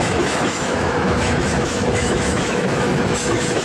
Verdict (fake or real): fake